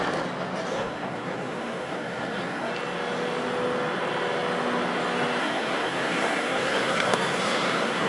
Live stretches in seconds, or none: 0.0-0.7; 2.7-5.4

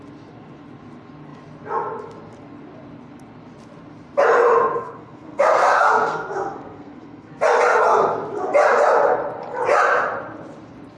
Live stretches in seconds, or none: 0.0-4.7; 7.4-11.0

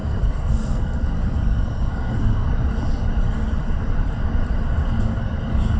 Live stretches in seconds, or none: 1.1-1.6; 2.5-5.8